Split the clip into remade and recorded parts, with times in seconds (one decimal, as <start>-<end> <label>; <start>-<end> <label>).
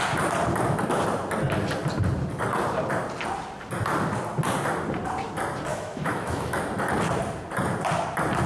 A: 0.0-5.7 recorded; 5.7-6.6 remade; 6.6-8.5 recorded